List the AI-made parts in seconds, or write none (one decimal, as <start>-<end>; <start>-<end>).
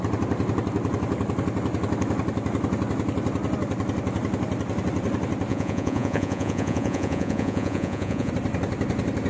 5.5-8.3